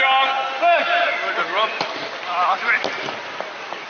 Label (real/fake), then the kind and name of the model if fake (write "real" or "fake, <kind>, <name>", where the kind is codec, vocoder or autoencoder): fake, vocoder, BigVGAN v2